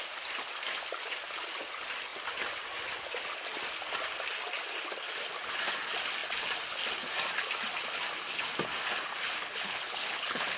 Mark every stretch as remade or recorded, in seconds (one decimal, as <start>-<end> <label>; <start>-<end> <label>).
0.0-9.4 recorded; 9.4-10.6 remade